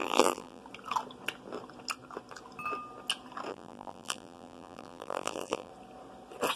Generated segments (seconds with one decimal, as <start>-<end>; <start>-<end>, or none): 0.0-0.6; 3.5-5.7